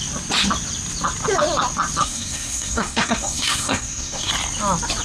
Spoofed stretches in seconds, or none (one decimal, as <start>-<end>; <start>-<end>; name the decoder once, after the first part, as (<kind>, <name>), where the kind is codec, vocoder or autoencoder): 2.0-4.3 (codec, SNAC)